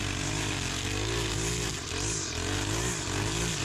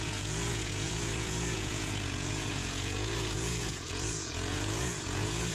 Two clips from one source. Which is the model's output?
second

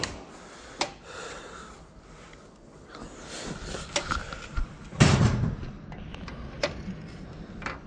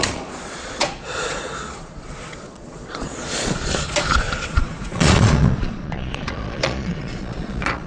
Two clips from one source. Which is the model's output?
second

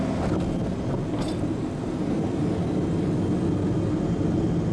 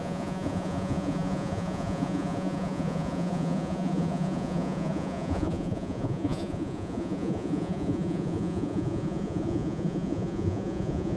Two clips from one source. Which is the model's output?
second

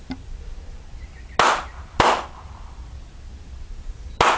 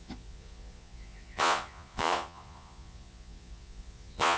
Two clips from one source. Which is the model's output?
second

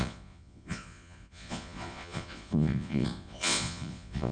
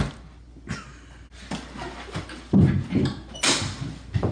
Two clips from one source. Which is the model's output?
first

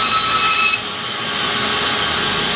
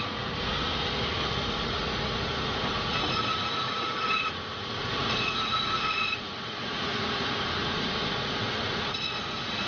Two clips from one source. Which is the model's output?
second